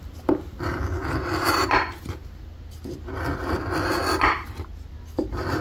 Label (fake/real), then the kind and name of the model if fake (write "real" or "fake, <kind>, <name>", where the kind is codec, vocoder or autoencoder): real